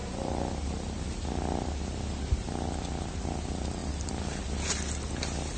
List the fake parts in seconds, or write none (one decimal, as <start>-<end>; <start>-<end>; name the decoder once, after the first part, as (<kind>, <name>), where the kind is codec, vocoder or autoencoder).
0.0-2.2 (vocoder, BigVGAN v2)